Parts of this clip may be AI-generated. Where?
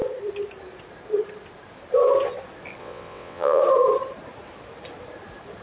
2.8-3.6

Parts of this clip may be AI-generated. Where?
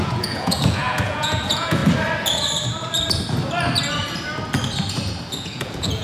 0.0-1.8; 5.4-6.0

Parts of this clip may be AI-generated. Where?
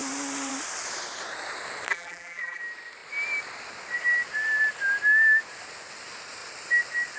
1.9-2.6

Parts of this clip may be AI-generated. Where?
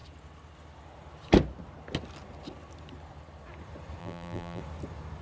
4.0-4.6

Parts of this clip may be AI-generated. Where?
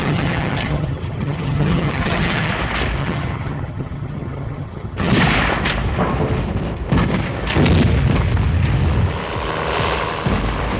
0.0-2.5; 3.0-5.1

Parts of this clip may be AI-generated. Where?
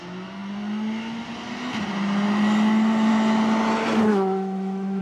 4.1-5.0